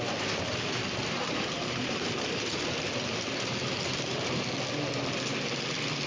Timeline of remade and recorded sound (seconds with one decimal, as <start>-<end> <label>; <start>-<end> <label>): 0.0-0.8 recorded; 0.8-4.4 remade; 4.4-6.1 recorded